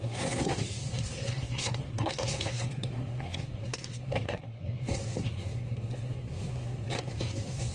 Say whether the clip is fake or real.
fake